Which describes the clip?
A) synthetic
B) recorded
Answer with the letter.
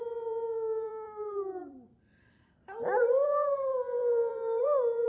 A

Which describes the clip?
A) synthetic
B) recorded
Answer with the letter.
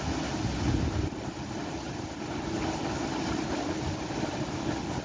B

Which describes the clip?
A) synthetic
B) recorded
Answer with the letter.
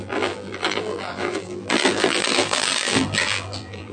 A